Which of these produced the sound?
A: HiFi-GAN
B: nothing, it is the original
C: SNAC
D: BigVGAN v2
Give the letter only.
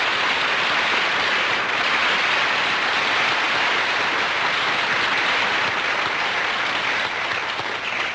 B